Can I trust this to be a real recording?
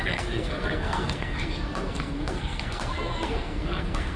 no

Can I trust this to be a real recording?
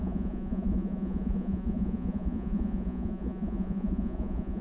no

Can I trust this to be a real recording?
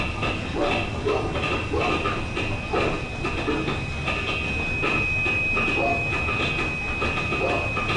yes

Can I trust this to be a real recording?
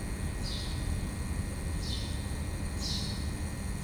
yes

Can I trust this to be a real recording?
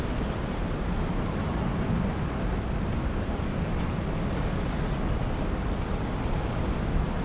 yes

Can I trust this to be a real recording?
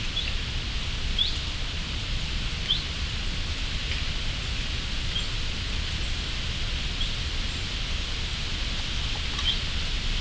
yes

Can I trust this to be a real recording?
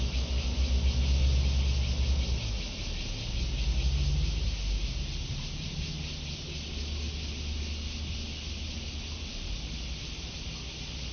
yes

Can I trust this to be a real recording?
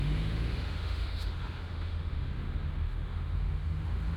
no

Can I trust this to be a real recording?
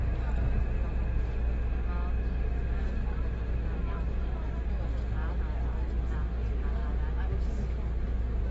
yes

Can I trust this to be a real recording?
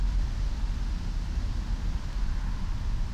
yes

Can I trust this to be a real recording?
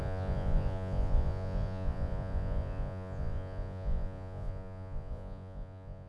no